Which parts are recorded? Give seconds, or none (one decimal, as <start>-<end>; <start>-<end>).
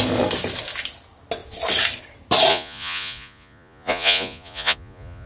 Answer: 0.0-2.5